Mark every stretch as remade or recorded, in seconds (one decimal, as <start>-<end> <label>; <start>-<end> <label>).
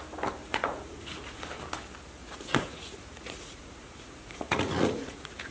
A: 0.0-0.4 recorded; 0.4-1.4 remade; 1.4-2.2 recorded; 2.2-5.5 remade